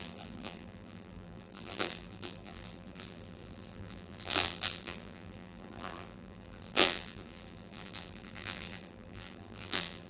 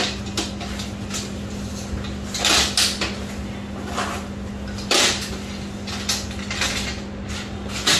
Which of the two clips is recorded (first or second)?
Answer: second